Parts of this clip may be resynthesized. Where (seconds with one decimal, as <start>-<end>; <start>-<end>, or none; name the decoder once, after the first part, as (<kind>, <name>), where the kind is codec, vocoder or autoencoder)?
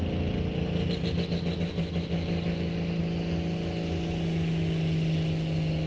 none